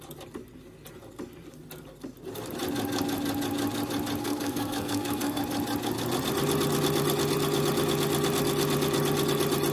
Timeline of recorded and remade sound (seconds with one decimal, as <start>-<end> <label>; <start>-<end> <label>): 0.0-4.2 recorded; 4.2-5.4 remade; 5.4-9.7 recorded